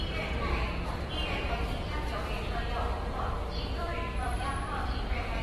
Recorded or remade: remade